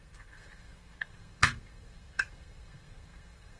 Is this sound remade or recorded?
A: remade